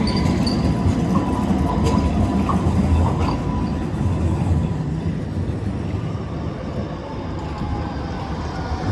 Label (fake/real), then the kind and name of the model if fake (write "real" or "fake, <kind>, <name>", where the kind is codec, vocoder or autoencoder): real